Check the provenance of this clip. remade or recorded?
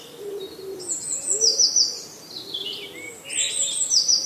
recorded